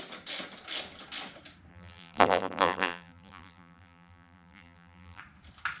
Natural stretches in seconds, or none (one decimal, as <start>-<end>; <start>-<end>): 0.0-1.7; 5.2-5.8